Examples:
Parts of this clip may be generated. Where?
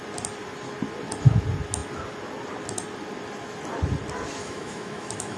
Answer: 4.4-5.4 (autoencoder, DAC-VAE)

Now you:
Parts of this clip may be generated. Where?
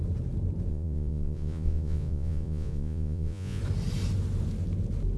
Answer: 0.7-3.6 (vocoder, Vocos)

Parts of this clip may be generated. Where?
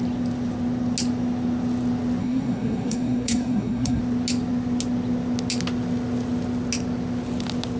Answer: 2.2-4.0 (codec, SNAC)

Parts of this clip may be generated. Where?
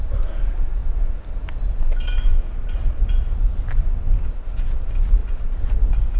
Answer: none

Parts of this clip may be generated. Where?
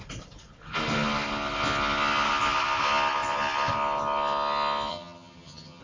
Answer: 4.9-5.8 (vocoder, HiFi-GAN)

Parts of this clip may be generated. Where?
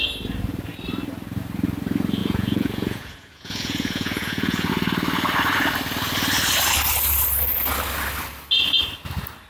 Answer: 2.2-4.7 (vocoder, Vocos)